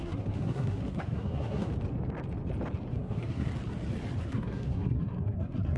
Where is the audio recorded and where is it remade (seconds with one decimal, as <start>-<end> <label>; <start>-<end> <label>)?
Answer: 0.0-1.7 remade; 1.7-2.9 recorded; 2.9-3.5 remade; 3.5-4.2 recorded; 4.2-5.8 remade